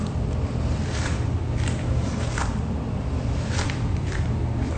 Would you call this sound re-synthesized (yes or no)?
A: yes